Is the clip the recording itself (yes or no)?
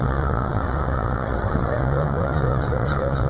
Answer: no